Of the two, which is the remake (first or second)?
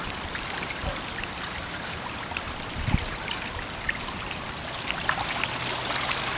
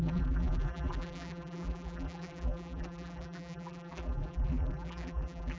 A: second